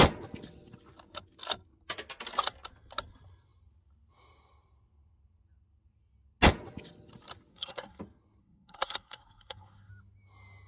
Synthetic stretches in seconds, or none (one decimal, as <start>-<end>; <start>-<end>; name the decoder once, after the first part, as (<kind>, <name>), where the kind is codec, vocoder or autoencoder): 7.5-8.0 (codec, SNAC); 8.4-9.9